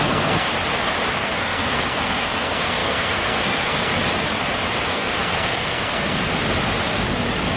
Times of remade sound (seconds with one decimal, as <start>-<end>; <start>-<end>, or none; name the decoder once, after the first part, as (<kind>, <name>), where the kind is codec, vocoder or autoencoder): 0.0-0.5 (codec, SNAC); 1.1-3.9; 4.9-6.3